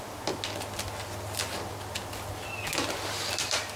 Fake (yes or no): no